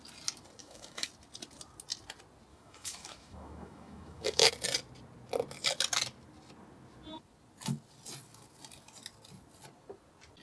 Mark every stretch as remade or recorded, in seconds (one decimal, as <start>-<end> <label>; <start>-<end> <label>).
0.0-0.6 recorded; 0.6-1.1 remade; 1.1-2.5 recorded; 2.5-4.5 remade; 4.5-10.4 recorded